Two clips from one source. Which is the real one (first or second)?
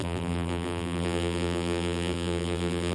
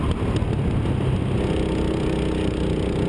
second